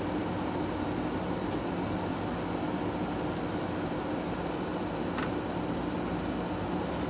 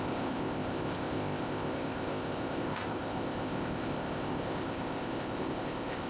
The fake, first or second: second